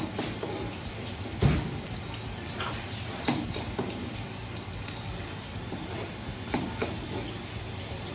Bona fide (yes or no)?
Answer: no